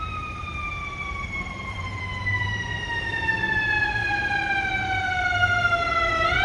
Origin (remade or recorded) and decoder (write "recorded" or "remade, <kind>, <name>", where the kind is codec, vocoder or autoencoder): remade, vocoder, BigVGAN v2